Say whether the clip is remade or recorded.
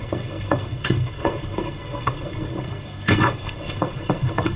remade